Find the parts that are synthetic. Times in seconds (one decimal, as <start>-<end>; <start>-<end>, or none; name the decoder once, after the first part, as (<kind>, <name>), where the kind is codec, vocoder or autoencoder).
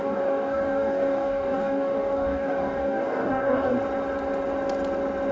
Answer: 0.0-3.7 (codec, DAC)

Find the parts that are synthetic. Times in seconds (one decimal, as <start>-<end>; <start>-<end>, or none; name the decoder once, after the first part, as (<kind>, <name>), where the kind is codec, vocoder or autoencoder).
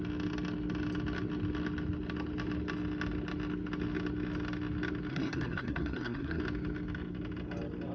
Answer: 5.1-6.4 (codec, SNAC)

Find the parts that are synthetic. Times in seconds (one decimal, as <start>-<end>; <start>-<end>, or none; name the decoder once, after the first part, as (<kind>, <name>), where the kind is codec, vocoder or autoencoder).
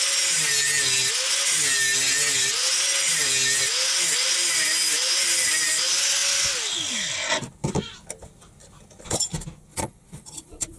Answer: 9.7-10.8 (vocoder, Vocos)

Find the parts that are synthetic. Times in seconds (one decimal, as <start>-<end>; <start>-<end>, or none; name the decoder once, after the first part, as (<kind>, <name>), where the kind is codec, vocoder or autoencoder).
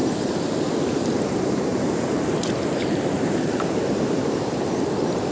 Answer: 0.0-0.7 (vocoder, BigVGAN v2); 1.7-2.3; 2.8-4.6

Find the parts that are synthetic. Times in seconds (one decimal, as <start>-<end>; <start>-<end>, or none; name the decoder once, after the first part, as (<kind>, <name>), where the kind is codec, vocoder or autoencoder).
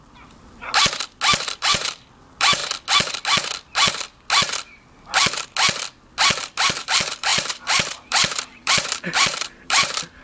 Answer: 0.0-0.6 (vocoder, BigVGAN v2); 1.5-2.6; 6.8-10.2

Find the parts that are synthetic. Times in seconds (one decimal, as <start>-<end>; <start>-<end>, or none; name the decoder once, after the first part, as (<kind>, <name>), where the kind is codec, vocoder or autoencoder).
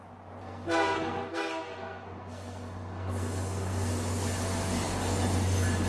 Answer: 0.4-3.9 (codec, SNAC)